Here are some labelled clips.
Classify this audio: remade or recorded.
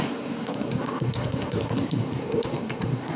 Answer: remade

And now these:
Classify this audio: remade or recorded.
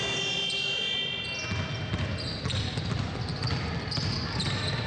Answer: recorded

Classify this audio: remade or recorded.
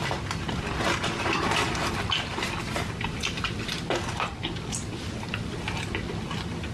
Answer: recorded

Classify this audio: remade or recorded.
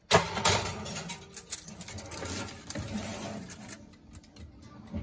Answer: recorded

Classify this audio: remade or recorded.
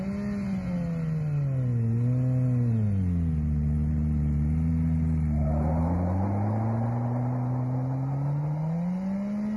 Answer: recorded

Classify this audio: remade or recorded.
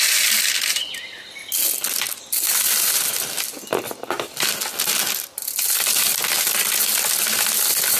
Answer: recorded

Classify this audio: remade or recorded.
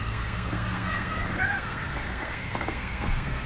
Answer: remade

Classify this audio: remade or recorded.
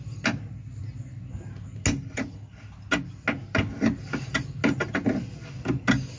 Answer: recorded